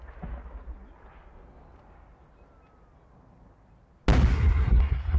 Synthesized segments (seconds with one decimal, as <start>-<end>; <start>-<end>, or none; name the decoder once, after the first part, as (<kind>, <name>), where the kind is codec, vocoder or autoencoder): 4.3-5.2 (codec, SNAC)